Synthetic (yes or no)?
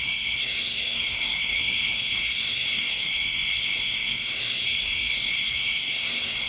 yes